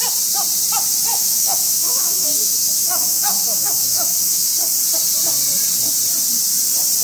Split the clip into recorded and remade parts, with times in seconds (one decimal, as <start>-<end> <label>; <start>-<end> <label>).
0.0-1.1 recorded; 1.1-4.5 remade; 4.5-7.0 recorded